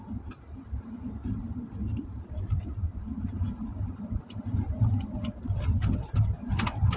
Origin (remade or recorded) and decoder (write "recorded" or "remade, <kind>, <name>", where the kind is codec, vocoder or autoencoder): remade, vocoder, BigVGAN v2